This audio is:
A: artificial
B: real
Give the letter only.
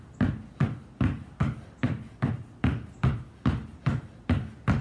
B